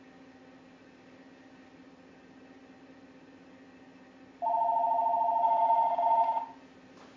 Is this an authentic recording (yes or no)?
yes